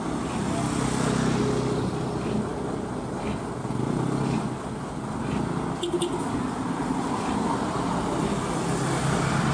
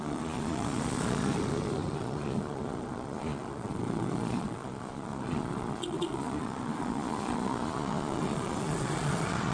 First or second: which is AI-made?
second